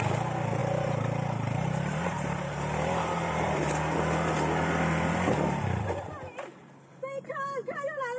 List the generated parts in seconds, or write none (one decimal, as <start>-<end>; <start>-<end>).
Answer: 0.6-3.7